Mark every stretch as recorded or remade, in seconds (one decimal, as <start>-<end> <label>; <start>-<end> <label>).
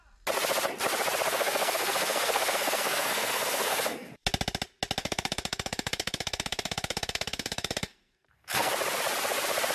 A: 0.0-1.3 recorded; 1.3-4.1 remade; 4.1-5.0 recorded; 5.0-8.7 remade; 8.7-9.7 recorded